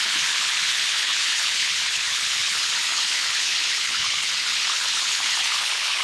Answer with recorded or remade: remade